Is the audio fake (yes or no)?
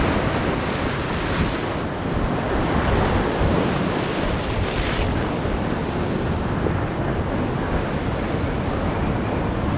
no